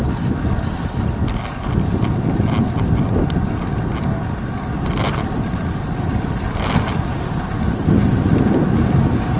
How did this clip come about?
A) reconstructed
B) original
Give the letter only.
B